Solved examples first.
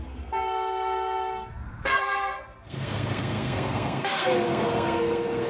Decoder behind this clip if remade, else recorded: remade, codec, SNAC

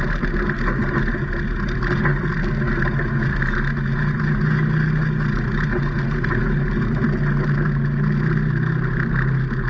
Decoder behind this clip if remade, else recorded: recorded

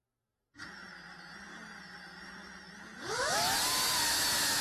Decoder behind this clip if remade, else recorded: recorded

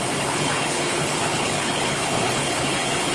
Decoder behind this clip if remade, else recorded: remade, codec, HILCodec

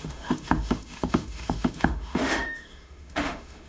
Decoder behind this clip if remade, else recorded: remade, autoencoder, DAC-VAE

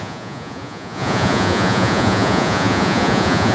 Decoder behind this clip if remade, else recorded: remade, vocoder, Vocos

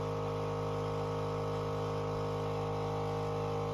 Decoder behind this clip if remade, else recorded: recorded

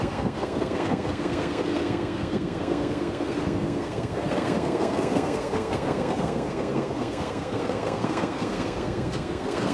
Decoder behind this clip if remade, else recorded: remade, codec, SNAC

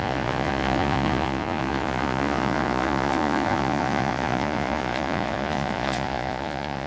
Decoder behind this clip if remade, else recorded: remade, vocoder, Vocos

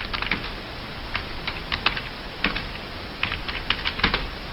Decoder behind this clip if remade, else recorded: recorded